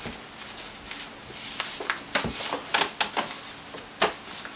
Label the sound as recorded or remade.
recorded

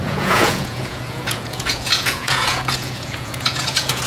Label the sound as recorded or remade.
remade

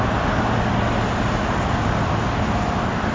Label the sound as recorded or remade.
recorded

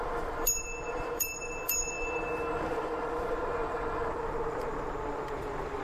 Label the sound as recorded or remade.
remade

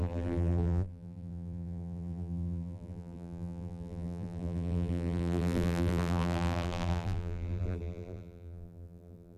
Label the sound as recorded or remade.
remade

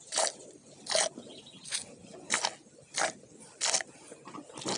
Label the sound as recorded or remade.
recorded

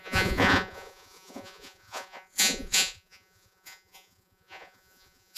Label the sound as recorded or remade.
remade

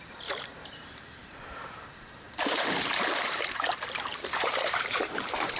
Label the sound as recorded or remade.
remade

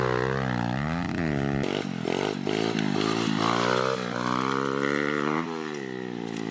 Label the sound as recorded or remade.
recorded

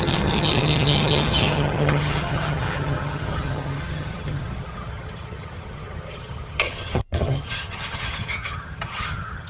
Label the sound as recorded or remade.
remade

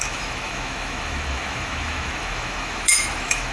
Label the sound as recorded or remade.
remade